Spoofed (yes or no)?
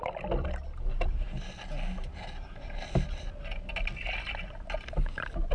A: no